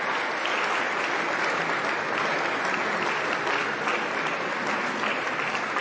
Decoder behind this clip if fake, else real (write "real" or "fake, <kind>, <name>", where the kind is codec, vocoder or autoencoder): real